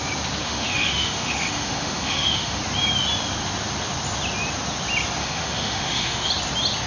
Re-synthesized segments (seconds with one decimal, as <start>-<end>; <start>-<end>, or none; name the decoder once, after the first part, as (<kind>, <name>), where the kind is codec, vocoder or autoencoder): 0.4-2.6 (autoencoder, DAC-VAE); 5.2-6.3

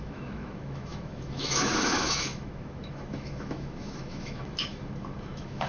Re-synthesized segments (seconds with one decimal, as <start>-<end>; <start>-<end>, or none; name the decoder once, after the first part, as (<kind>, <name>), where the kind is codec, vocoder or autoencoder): 0.0-5.7 (autoencoder, DAC-VAE)

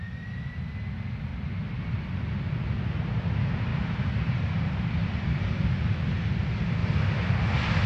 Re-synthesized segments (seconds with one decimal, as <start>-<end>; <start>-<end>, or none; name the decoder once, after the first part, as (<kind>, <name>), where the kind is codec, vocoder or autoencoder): 1.3-1.8 (vocoder, BigVGAN v2); 3.7-5.4

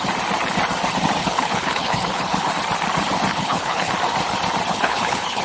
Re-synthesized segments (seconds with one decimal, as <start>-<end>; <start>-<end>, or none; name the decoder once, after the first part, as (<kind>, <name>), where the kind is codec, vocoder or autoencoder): 1.2-2.5 (codec, HILCodec); 3.3-3.9; 4.7-5.4